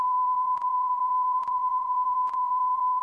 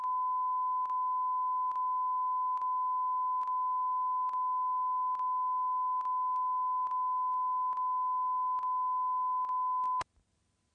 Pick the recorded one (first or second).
second